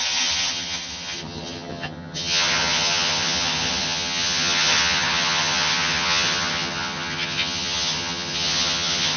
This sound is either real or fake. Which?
fake